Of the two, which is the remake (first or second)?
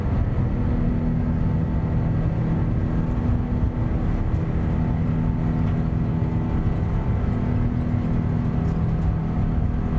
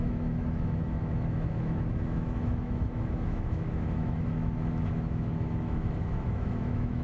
second